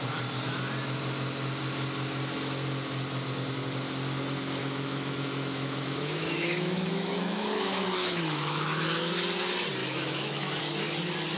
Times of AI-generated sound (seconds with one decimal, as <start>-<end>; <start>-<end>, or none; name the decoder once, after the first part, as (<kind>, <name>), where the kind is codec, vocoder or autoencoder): 4.6-9.1 (autoencoder, DAC-VAE); 9.8-10.6